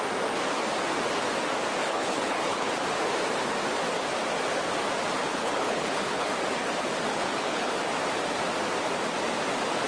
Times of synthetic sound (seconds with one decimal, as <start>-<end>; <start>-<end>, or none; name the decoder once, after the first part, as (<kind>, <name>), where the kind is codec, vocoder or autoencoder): 1.8-2.7 (codec, HILCodec); 5.3-6.3; 7.1-7.7